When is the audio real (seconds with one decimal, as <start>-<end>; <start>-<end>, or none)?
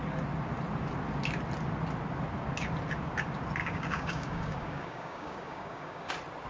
0.0-3.6; 6.1-6.5